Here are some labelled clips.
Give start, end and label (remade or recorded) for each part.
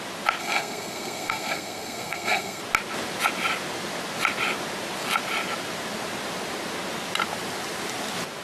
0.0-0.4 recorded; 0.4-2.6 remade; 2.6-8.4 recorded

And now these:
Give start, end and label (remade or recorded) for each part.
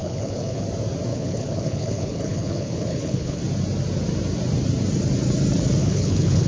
0.0-0.6 remade; 0.6-1.1 recorded; 1.1-3.4 remade; 3.4-5.8 recorded; 5.8-6.5 remade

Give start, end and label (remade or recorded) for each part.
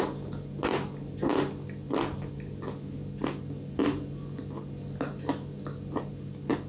0.0-6.7 recorded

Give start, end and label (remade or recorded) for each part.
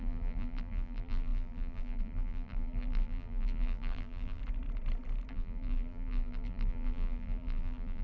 0.0-4.4 remade; 4.4-5.3 recorded; 5.3-8.0 remade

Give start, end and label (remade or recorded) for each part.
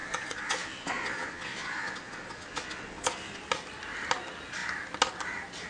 0.0-3.4 remade; 3.4-5.7 recorded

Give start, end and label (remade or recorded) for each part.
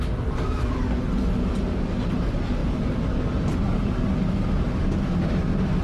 0.0-5.8 recorded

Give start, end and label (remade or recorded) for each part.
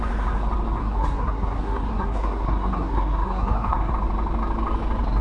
0.0-0.8 recorded; 0.8-3.9 remade; 3.9-5.2 recorded